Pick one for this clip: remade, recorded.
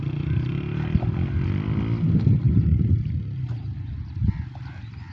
recorded